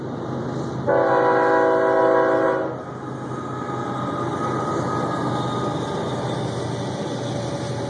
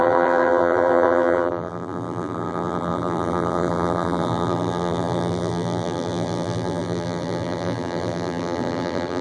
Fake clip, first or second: second